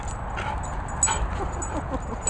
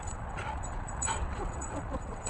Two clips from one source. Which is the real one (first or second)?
first